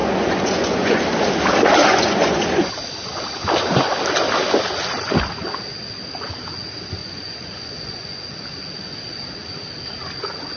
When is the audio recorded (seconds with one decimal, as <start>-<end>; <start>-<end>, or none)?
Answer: 1.0-1.8; 2.7-7.0; 8.2-10.6